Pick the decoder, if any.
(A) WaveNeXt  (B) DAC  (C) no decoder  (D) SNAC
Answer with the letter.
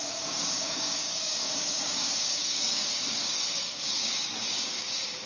B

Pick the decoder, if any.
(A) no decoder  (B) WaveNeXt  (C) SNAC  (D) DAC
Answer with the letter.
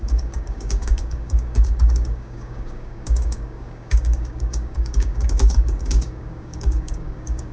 D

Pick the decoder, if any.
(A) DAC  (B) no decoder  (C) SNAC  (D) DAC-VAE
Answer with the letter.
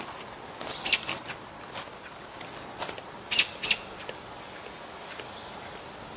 B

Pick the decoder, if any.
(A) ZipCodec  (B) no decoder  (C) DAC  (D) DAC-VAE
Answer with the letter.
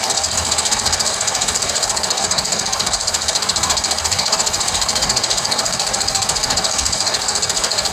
C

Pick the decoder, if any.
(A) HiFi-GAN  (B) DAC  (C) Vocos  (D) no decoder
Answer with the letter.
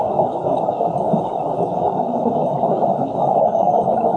B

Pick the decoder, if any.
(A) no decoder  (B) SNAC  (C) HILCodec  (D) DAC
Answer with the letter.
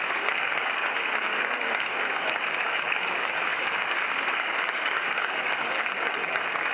D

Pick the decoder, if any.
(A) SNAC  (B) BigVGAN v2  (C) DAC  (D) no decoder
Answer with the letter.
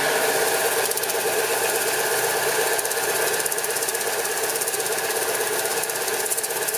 D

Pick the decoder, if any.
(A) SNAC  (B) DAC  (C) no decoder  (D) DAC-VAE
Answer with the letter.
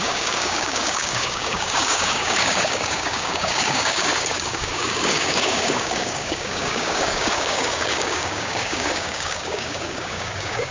B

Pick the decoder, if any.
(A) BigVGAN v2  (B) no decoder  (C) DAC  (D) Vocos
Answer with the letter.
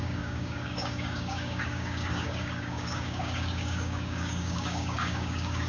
C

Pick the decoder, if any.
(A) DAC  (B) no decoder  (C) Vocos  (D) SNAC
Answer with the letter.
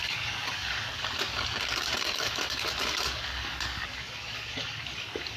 A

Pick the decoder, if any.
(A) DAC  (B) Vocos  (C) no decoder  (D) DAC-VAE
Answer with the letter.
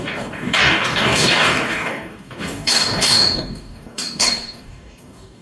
A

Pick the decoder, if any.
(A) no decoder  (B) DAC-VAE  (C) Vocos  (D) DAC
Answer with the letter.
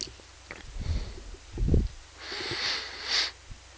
A